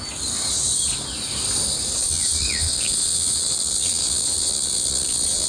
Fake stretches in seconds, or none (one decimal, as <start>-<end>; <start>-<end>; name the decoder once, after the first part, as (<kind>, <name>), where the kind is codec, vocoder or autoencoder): 2.0-5.5 (vocoder, Vocos)